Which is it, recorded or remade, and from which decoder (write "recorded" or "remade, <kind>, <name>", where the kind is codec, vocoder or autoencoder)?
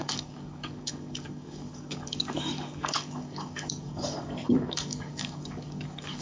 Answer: remade, codec, DAC